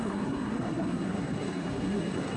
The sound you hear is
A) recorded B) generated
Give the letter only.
B